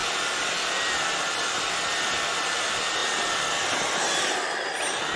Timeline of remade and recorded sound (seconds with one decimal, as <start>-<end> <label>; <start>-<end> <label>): 0.0-5.2 recorded